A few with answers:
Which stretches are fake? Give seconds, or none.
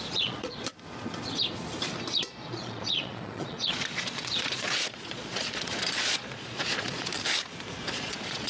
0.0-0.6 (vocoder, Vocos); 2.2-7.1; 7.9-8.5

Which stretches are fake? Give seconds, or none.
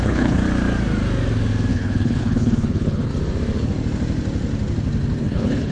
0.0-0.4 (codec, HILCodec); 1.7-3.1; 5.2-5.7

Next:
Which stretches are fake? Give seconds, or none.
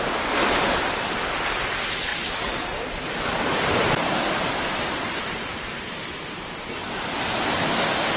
2.1-7.0 (vocoder, BigVGAN v2)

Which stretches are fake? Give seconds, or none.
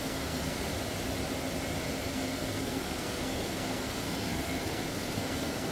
0.0-0.7 (codec, SNAC); 2.0-5.7